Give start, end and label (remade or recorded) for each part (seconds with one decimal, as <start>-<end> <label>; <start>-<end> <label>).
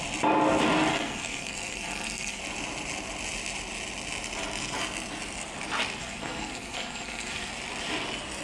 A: 0.0-0.9 recorded; 0.9-2.4 remade; 2.4-6.0 recorded; 6.0-7.5 remade; 7.5-8.4 recorded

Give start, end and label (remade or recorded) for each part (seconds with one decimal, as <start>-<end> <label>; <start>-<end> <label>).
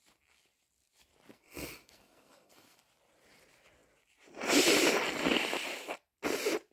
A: 0.0-1.3 recorded; 1.3-2.8 remade; 2.8-6.7 recorded